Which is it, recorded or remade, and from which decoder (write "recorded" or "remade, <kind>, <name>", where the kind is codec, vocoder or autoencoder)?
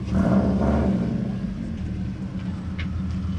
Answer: recorded